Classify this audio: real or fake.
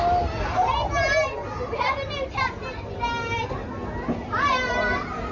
real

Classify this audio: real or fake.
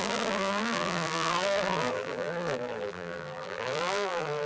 fake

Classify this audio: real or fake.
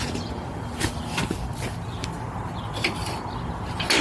real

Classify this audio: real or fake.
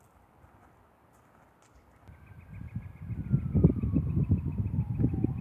real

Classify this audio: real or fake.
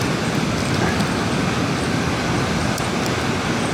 real